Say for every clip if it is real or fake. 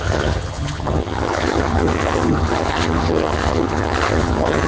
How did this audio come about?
fake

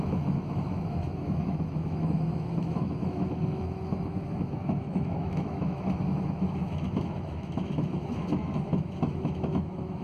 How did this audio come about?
fake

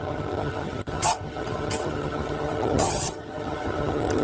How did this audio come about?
fake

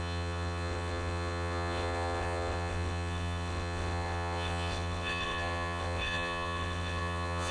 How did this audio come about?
fake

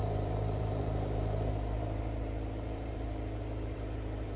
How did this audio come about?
fake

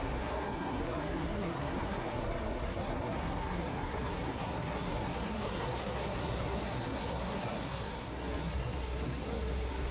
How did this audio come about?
fake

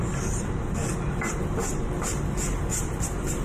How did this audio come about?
real